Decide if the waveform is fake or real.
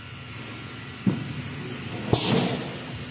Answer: real